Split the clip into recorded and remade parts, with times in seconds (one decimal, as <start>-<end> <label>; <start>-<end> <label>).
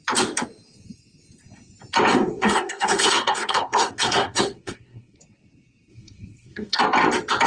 0.0-2.1 recorded; 2.1-5.2 remade; 5.2-5.9 recorded; 5.9-6.8 remade; 6.8-7.5 recorded